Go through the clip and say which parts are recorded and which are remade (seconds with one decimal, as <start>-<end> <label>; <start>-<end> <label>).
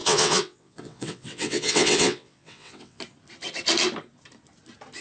0.0-3.0 remade; 3.0-5.0 recorded